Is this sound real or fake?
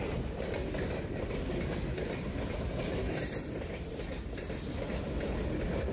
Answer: fake